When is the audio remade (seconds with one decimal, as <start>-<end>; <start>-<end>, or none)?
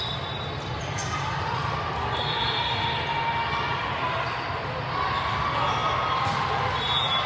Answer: none